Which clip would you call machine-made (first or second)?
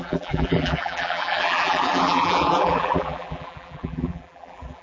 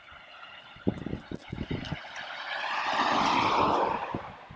first